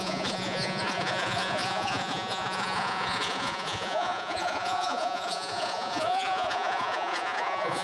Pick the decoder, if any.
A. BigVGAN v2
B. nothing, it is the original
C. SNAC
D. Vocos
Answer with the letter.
D